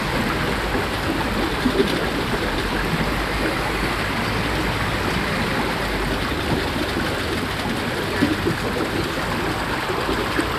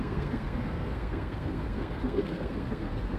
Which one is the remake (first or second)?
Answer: second